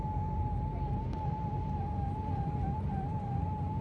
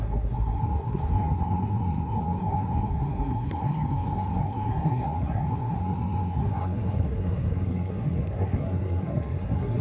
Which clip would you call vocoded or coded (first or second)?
second